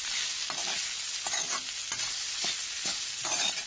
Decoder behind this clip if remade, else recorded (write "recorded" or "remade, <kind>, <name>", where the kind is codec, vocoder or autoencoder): recorded